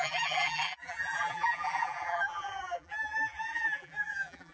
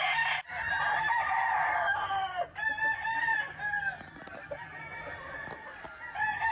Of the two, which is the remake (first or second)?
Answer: first